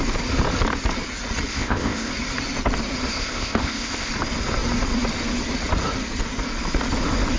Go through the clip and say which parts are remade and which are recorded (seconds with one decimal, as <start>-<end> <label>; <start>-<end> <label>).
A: 0.0-1.5 recorded; 1.5-2.1 remade; 2.1-3.1 recorded; 3.1-4.1 remade; 4.1-7.4 recorded